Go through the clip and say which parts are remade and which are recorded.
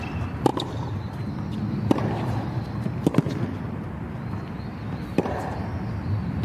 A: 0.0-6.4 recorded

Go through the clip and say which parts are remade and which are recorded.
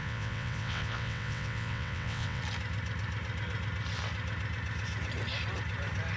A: 0.0-2.4 remade; 2.4-6.2 recorded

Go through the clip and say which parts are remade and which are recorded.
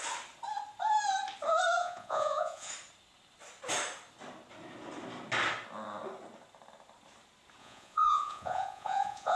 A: 0.0-1.8 recorded; 1.8-2.7 remade; 2.7-7.6 recorded; 7.6-9.4 remade